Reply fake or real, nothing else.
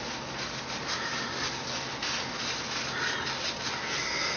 real